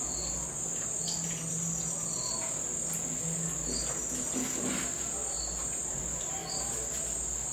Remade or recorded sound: recorded